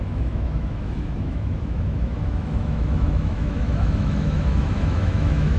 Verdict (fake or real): fake